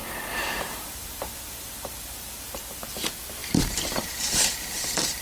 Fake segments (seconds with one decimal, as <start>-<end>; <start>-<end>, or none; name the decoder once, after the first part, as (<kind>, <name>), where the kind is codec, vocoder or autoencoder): 0.0-2.8 (vocoder, BigVGAN v2); 3.4-5.2